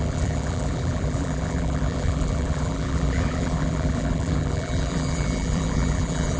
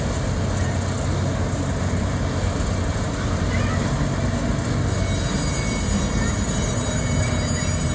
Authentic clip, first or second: second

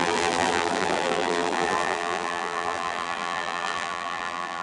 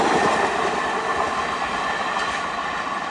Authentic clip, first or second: second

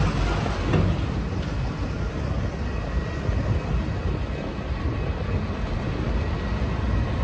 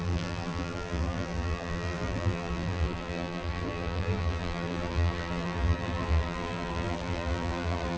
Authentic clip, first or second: first